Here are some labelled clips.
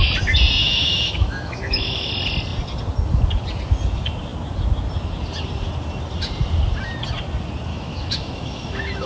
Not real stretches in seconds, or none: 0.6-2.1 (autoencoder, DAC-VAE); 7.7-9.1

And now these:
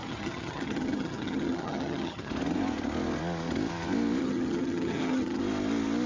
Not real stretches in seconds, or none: 0.0-2.3 (vocoder, HiFi-GAN); 4.2-5.4

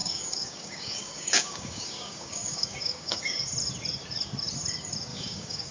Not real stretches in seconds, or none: 0.0-3.4 (codec, DAC); 5.1-5.7

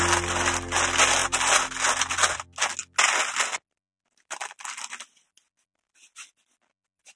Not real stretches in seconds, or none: none

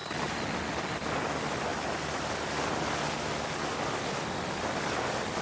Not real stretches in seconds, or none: none